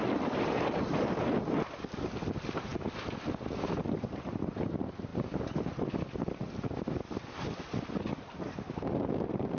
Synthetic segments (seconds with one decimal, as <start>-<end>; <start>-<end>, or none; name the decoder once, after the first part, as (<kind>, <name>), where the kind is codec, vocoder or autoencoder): none

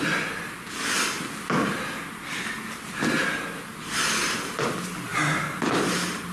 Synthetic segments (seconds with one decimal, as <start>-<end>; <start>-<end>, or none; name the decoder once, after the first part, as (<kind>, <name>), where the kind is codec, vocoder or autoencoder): none

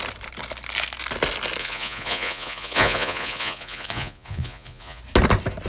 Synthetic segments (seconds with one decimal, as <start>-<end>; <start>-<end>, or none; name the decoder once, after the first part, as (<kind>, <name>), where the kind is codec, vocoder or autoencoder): 1.6-5.0 (vocoder, Vocos)